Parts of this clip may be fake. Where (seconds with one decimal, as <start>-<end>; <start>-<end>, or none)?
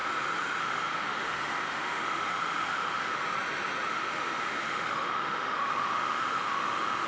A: 0.6-3.2; 3.9-7.1